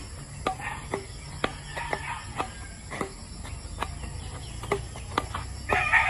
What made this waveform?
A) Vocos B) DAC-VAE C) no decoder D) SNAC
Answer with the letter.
C